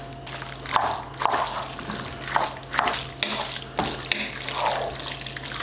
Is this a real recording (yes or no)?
yes